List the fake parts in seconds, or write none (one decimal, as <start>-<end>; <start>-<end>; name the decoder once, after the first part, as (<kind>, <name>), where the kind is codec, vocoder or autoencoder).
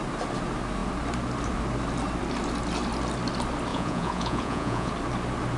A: 3.7-4.9 (vocoder, Vocos)